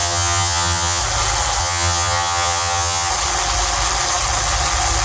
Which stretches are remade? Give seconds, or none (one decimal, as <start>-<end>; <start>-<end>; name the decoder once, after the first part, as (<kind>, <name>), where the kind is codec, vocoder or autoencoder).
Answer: 0.0-1.0 (vocoder, HiFi-GAN); 1.6-3.1